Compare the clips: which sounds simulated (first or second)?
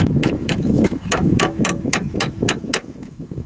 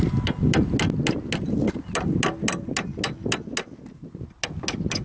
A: first